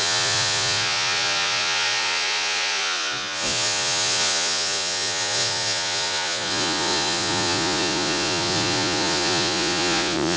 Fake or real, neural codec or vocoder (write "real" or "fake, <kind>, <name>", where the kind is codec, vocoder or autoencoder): fake, vocoder, Vocos